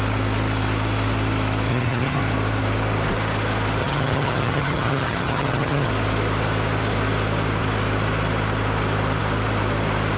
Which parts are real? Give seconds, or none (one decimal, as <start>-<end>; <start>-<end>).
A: 0.0-1.7; 2.2-3.8; 5.9-10.2